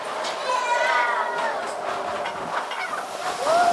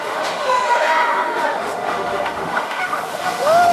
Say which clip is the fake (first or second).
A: second